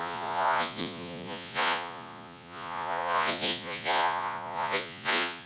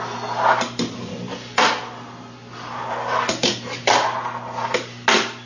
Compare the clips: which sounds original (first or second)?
second